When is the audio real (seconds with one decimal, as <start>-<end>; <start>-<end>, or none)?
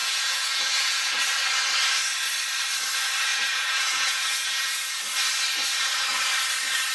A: 1.1-3.3; 5.0-6.9